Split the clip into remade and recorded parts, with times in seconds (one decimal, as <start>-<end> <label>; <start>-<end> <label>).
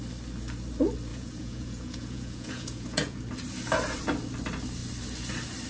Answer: 0.0-1.1 recorded; 1.1-3.2 remade; 3.2-5.7 recorded